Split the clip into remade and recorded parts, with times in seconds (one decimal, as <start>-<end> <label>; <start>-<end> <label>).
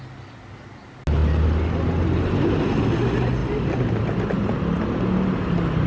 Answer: 0.0-5.9 recorded